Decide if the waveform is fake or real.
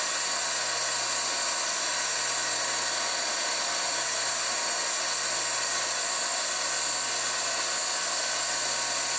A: real